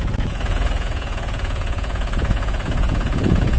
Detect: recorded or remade remade